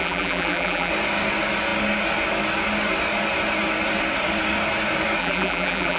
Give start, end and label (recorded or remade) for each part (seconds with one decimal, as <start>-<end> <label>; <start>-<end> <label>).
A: 0.0-0.9 remade; 0.9-5.2 recorded; 5.2-6.0 remade